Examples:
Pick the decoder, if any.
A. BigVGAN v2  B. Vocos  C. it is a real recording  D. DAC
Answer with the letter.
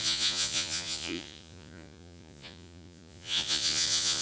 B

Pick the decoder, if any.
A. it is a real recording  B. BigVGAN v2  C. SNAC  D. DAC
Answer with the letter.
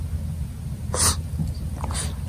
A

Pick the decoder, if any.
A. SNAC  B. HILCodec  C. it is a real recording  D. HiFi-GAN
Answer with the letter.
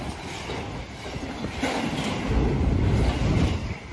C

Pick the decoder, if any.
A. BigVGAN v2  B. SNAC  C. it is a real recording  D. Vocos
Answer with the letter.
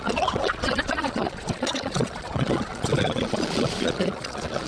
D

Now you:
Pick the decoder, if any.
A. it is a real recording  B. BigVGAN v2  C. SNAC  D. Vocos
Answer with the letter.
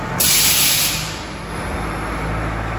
A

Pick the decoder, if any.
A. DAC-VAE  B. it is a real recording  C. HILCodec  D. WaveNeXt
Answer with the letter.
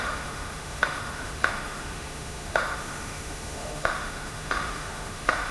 A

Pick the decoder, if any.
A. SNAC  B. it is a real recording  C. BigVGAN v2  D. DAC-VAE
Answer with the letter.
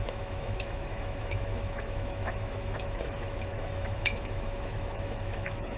D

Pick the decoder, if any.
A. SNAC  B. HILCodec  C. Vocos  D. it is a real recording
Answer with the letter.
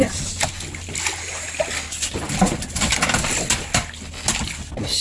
D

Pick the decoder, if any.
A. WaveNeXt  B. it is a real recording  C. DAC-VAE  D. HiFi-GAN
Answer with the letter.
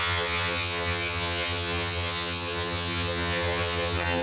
D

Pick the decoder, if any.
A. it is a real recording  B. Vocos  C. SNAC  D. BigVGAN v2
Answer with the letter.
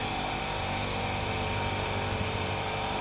D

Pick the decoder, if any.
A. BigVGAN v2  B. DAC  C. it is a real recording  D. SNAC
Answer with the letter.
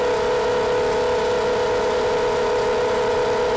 C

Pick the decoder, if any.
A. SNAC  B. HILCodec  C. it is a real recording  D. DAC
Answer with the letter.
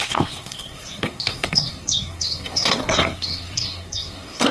A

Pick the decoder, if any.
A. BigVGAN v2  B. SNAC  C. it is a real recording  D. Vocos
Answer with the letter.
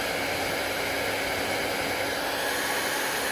C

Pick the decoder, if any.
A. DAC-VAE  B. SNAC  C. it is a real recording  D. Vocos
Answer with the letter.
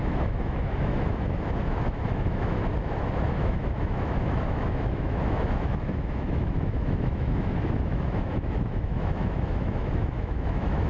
A